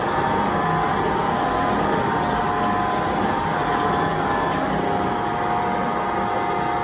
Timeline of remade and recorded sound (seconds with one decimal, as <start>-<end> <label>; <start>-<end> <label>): 0.0-6.8 recorded